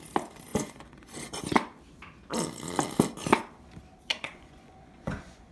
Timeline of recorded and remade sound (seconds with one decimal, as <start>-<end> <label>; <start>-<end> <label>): 0.0-0.5 recorded; 0.5-1.4 remade; 1.4-4.1 recorded; 4.1-5.5 remade

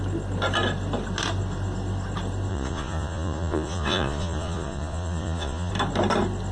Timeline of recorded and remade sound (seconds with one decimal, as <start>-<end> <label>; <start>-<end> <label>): 0.0-2.5 recorded; 2.5-5.7 remade; 5.7-6.5 recorded

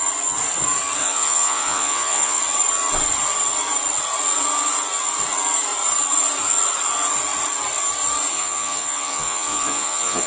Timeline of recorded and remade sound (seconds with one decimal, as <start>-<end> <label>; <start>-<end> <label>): 0.0-1.0 recorded; 1.0-2.4 remade; 2.4-8.3 recorded; 8.3-10.3 remade

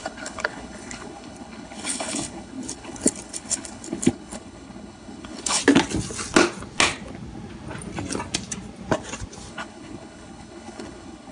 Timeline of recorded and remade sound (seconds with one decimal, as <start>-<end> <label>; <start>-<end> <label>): 0.0-5.6 remade; 5.6-9.5 recorded; 9.5-11.3 remade